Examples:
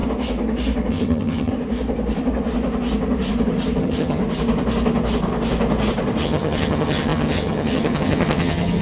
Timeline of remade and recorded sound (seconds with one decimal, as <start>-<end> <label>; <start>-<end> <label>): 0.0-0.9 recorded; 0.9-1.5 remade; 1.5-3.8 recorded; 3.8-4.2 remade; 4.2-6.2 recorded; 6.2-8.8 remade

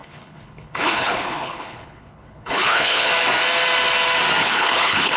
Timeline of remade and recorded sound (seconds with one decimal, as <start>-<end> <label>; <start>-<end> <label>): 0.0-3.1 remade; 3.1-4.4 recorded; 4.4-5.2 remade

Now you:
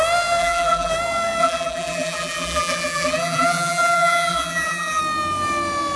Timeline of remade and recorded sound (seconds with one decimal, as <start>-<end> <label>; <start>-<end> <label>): 0.0-0.4 recorded; 0.4-0.9 remade; 0.9-1.4 recorded; 1.4-5.0 remade; 5.0-6.0 recorded

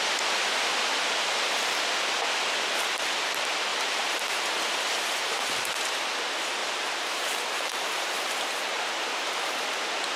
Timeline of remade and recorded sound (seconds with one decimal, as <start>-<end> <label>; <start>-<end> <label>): 0.0-3.7 recorded; 3.7-5.5 remade; 5.5-6.6 recorded; 6.6-9.3 remade; 9.3-10.2 recorded

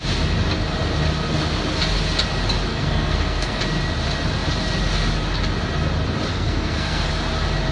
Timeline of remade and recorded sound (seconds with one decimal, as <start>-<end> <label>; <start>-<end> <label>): 0.0-2.7 recorded; 2.7-3.6 remade; 3.6-6.3 recorded; 6.3-7.1 remade; 7.1-7.7 recorded